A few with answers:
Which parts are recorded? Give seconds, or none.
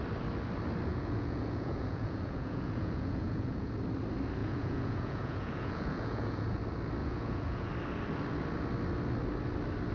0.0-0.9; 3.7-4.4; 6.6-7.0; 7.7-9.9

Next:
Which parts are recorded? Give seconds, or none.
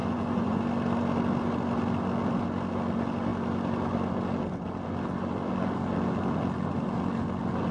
0.6-7.7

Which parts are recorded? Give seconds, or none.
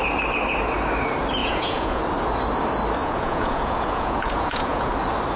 0.0-1.4; 2.0-3.0; 4.9-5.4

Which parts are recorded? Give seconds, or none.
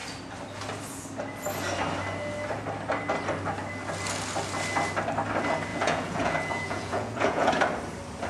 0.0-5.7; 7.5-8.3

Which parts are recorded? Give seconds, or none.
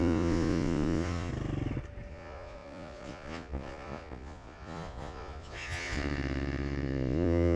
1.3-2.1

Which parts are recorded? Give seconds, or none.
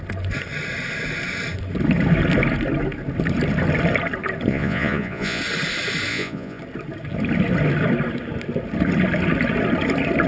0.0-4.5; 5.4-6.1; 6.6-10.3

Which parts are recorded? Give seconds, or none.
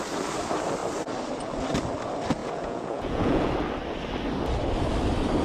0.0-2.4; 3.5-5.4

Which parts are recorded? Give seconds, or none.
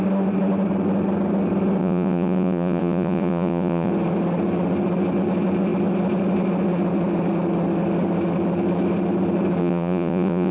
0.0-1.8; 3.9-9.6